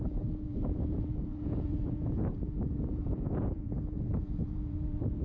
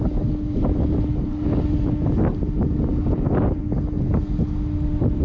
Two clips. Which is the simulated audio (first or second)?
first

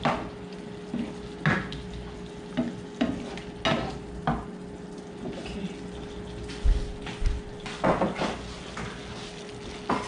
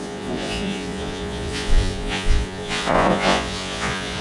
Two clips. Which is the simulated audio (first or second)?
second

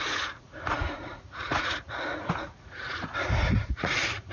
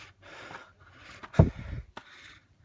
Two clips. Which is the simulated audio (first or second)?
first